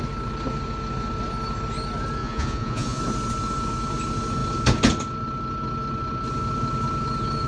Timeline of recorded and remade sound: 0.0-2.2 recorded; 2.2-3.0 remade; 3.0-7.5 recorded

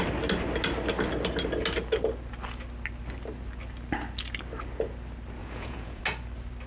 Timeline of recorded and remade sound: 0.0-5.4 recorded; 5.4-6.0 remade; 6.0-6.7 recorded

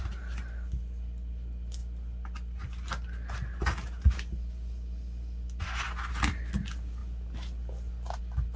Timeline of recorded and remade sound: 0.0-8.6 recorded

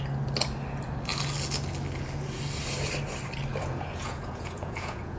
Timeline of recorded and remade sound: 0.0-3.5 recorded; 3.5-5.2 remade

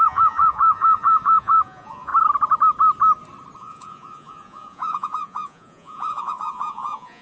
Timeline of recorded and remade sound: 0.0-2.1 remade; 2.1-3.6 recorded; 3.6-7.2 remade